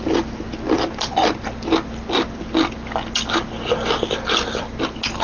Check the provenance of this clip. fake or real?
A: real